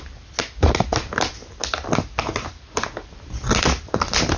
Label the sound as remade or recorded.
recorded